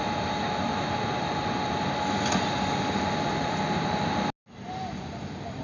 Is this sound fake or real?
real